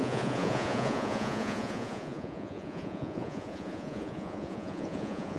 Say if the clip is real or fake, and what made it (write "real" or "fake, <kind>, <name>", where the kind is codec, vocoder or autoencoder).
fake, vocoder, Vocos